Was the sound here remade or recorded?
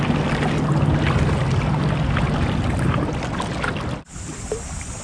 recorded